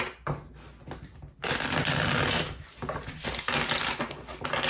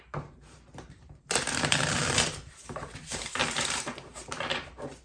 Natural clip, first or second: first